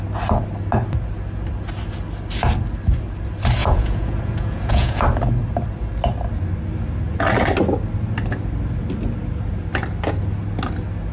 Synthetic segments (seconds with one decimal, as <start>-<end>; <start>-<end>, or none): 3.6-5.0